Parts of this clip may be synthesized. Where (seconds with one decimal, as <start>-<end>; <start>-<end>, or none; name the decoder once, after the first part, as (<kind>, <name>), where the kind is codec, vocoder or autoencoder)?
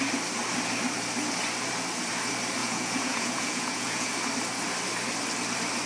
2.6-4.1 (vocoder, Vocos)